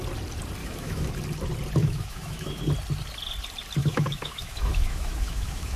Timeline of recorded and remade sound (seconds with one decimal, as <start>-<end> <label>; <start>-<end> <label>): 0.0-0.6 recorded; 0.6-1.1 remade; 1.1-1.8 recorded; 1.8-2.6 remade; 2.6-3.8 recorded; 3.8-5.8 remade